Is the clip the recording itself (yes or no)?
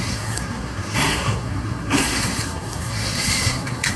no